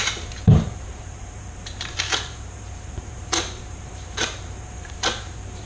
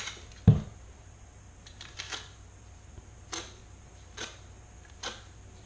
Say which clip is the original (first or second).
second